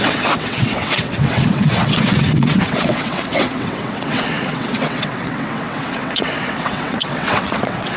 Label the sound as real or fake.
fake